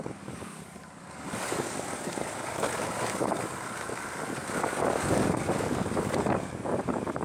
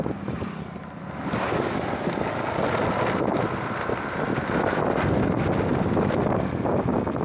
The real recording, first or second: second